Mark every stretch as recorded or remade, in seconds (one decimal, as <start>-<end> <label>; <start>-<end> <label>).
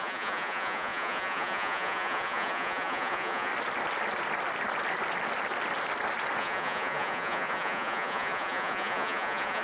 0.0-3.5 remade; 3.5-6.4 recorded; 6.4-9.6 remade